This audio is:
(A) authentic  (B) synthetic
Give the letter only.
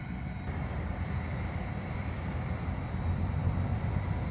B